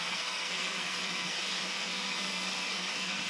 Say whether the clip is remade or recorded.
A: remade